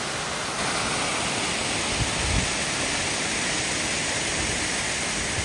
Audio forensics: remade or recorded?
recorded